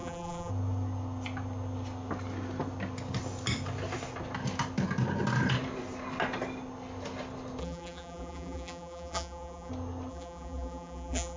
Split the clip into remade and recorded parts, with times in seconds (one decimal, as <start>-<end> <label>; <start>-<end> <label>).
0.0-0.5 remade; 0.5-7.6 recorded; 7.6-9.7 remade; 9.7-10.1 recorded; 10.1-11.4 remade